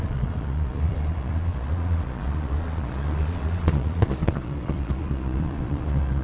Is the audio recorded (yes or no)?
no